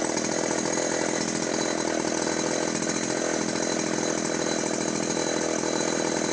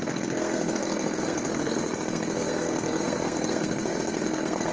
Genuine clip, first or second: first